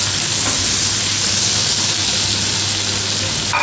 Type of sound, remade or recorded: recorded